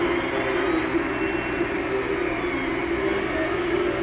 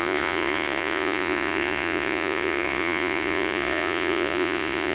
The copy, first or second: second